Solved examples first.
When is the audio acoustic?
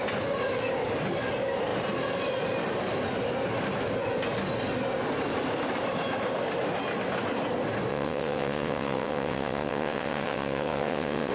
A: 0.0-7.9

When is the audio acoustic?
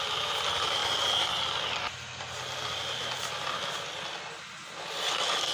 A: 0.0-5.5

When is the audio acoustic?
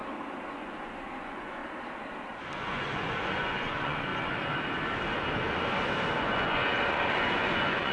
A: 0.0-0.5; 1.6-2.4; 4.1-6.2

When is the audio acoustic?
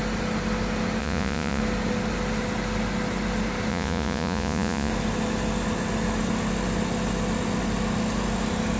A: 0.0-1.0; 1.6-3.7; 4.9-8.8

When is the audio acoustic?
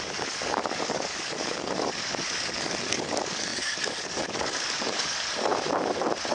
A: 5.5-6.3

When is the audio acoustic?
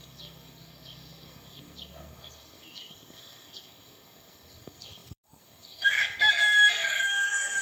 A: none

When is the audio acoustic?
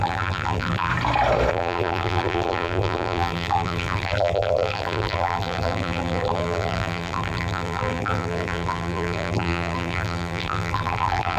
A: 0.9-1.5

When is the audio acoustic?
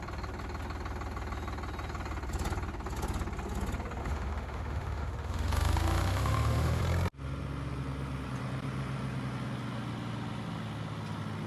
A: 0.0-4.0; 6.8-11.5